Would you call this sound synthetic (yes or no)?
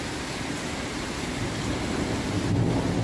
no